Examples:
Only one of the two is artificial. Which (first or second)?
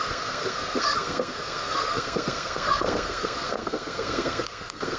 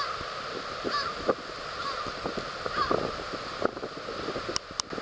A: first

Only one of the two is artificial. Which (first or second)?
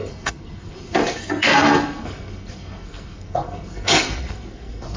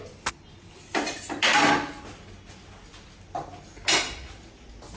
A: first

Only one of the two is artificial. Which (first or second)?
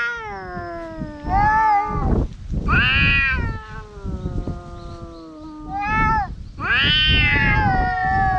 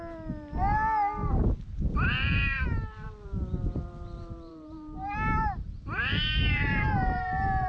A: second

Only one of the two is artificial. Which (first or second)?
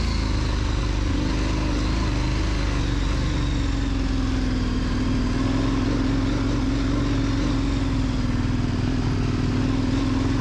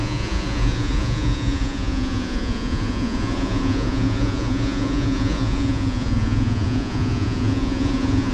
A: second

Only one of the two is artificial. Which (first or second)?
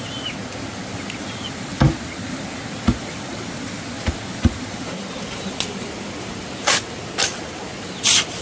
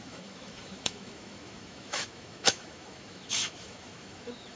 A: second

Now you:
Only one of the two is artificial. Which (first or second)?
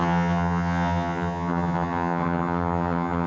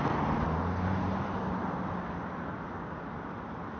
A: first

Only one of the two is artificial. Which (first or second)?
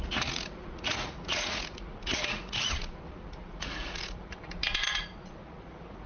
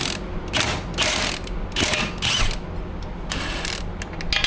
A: first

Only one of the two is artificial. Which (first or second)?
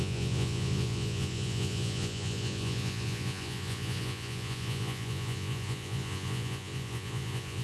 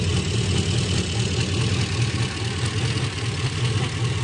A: first